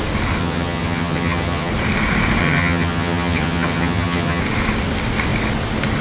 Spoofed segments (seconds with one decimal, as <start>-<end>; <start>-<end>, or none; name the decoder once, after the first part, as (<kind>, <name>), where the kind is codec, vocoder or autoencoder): 0.4-1.7 (vocoder, HiFi-GAN); 2.4-4.4